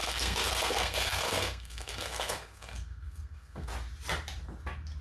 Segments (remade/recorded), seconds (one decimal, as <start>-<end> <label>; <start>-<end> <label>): 0.0-3.7 remade; 3.7-5.0 recorded